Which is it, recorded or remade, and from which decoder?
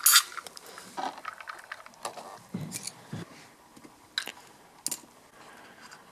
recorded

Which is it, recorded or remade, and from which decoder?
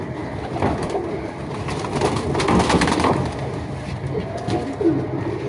recorded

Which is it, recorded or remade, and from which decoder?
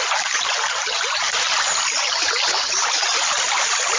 recorded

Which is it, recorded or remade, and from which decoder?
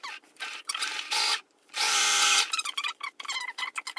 remade, vocoder, BigVGAN v2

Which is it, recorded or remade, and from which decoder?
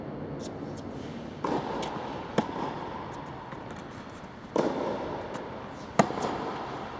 recorded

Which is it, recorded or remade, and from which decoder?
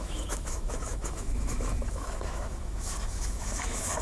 remade, autoencoder, DAC-VAE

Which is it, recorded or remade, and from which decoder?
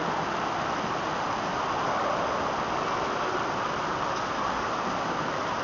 recorded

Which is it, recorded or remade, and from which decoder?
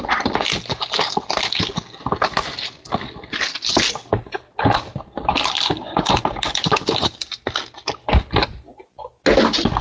recorded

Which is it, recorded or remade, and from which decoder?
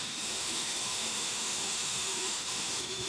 remade, autoencoder, DAC-VAE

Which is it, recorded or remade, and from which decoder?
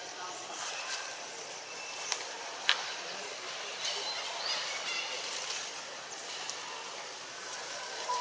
remade, vocoder, BigVGAN v2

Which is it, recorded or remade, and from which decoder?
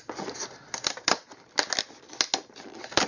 recorded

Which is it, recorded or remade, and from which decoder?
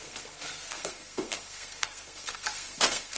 remade, codec, SNAC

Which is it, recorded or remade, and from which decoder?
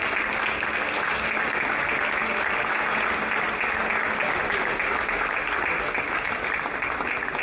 recorded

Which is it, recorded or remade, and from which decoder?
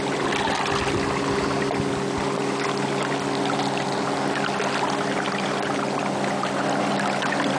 recorded